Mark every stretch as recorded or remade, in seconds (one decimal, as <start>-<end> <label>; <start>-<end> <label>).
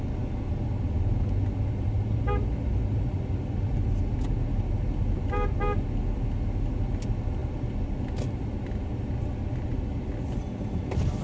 0.0-11.2 recorded